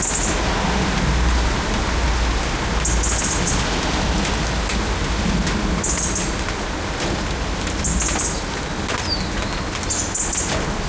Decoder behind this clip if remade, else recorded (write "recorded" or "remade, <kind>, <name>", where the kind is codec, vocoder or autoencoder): recorded